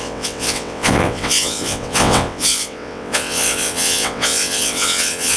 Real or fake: fake